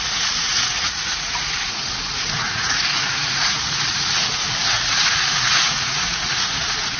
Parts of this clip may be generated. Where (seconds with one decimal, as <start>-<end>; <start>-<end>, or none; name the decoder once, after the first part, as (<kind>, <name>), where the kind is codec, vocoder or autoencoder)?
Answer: 0.0-7.0 (vocoder, Vocos)